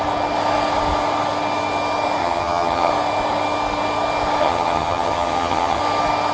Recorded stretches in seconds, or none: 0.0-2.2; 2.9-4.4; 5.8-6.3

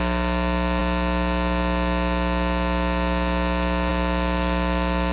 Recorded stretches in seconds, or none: 0.0-5.1